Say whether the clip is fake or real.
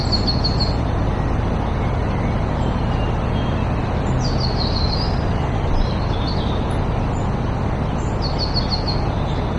real